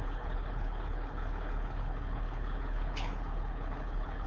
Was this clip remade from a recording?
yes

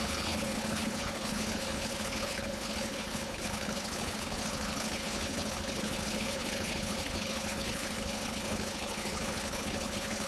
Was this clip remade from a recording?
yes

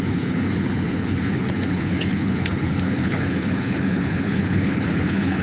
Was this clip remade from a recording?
yes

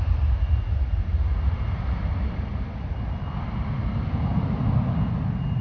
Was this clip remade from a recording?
no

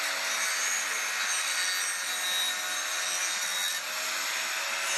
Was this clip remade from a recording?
no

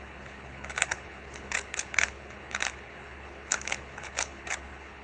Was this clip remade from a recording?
yes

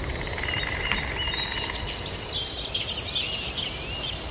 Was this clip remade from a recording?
no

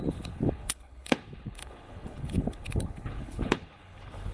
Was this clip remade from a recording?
yes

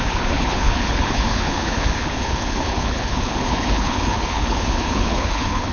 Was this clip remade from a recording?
yes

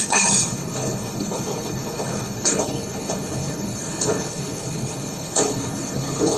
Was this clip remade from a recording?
yes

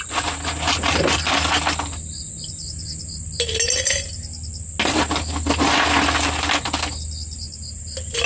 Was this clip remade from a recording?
no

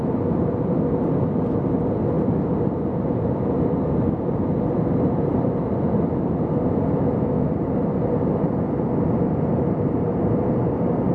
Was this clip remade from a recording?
no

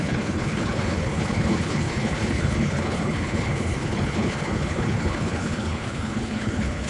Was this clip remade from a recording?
yes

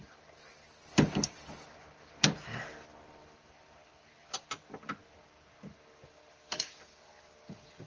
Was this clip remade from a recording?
no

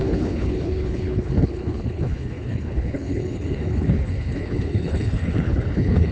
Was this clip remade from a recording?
yes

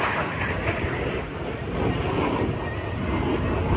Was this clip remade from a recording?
no